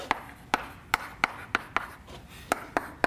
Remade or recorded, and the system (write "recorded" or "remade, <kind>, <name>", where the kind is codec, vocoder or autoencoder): recorded